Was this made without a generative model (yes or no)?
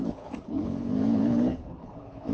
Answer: no